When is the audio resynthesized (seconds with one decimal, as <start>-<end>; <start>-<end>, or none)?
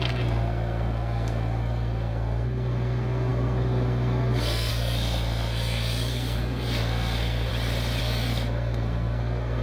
0.0-7.5; 8.0-9.6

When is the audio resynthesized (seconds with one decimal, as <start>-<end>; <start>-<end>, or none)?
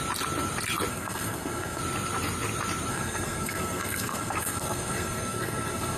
0.9-1.8; 2.9-6.0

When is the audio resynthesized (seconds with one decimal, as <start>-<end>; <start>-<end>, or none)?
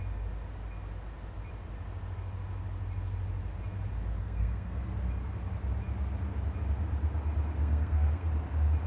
4.2-4.8; 7.6-8.3